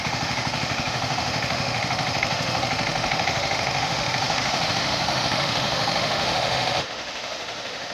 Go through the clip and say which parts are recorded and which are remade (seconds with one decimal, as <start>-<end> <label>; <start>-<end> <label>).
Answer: 0.0-7.9 remade